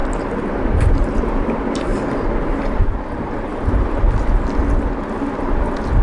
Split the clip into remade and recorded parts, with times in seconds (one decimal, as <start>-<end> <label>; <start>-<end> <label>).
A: 0.0-1.3 remade; 1.3-1.9 recorded; 1.9-4.6 remade; 4.6-6.0 recorded